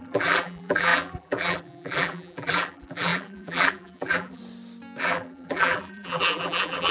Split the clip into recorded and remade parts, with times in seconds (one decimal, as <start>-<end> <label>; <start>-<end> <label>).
0.0-4.4 remade; 4.4-5.0 recorded; 5.0-6.9 remade